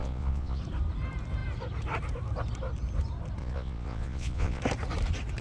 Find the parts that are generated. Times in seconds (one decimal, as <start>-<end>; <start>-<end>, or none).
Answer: 0.0-0.6; 3.4-4.6